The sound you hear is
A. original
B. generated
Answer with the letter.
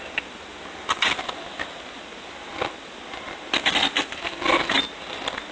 A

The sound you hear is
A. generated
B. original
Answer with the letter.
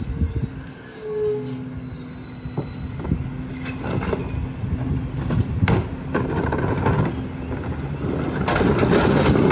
B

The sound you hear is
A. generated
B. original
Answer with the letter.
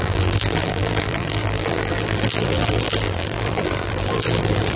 A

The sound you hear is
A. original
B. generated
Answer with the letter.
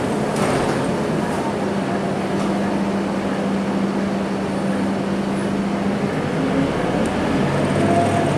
A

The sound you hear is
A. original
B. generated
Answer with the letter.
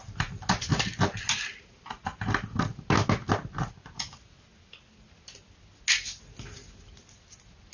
A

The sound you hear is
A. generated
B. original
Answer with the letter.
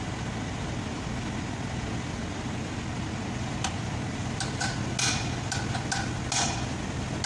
B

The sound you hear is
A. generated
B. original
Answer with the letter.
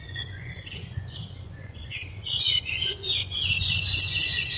A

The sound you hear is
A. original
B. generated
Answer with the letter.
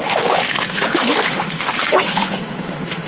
B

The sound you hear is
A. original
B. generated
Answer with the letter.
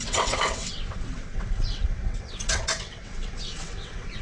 B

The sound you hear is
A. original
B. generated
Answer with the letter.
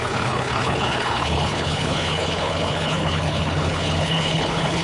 B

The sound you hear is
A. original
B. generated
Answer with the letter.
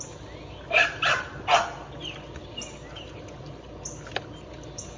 A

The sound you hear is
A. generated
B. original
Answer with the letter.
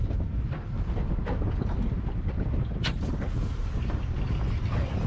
B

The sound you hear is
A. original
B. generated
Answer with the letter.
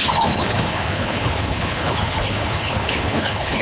B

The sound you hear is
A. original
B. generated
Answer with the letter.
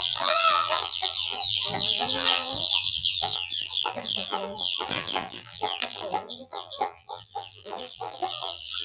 B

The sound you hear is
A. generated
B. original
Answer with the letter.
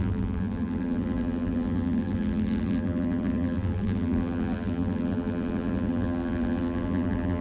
A